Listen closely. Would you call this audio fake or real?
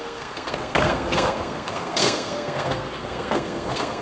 fake